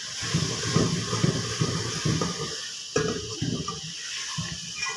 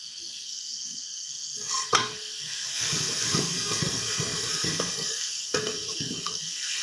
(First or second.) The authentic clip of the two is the first